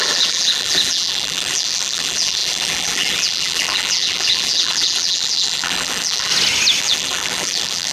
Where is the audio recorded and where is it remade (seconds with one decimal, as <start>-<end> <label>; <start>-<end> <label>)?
0.0-6.3 remade; 6.3-6.8 recorded; 6.8-7.9 remade